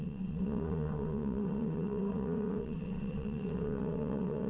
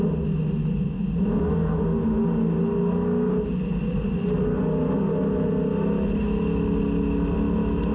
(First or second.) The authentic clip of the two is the second